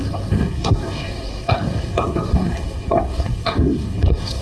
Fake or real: fake